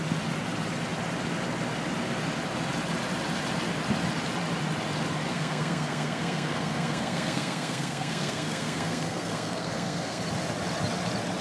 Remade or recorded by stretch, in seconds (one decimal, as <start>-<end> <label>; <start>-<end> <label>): 0.0-5.3 recorded; 5.3-10.2 remade; 10.2-11.4 recorded